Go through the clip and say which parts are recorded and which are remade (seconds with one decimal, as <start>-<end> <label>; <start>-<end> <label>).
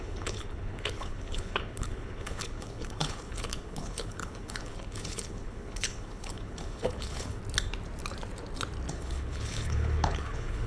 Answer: 0.0-7.4 remade; 7.4-8.9 recorded; 8.9-10.7 remade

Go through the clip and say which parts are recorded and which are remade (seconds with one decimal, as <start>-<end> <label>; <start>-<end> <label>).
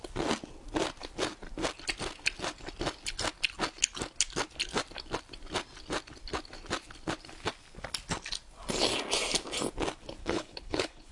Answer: 0.0-10.2 recorded; 10.2-11.1 remade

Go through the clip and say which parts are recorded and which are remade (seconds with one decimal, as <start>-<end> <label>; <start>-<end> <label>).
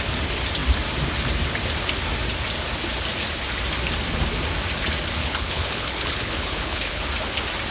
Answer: 0.0-5.2 recorded; 5.2-7.0 remade; 7.0-7.7 recorded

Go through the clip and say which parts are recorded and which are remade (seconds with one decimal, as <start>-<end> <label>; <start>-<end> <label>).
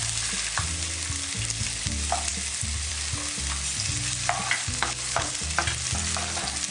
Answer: 0.0-4.6 recorded; 4.6-5.3 remade; 5.3-6.7 recorded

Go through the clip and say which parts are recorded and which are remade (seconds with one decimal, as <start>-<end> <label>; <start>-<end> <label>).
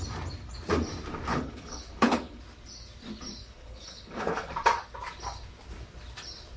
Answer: 0.0-1.3 recorded; 1.3-2.4 remade; 2.4-3.4 recorded; 3.4-4.5 remade; 4.5-6.6 recorded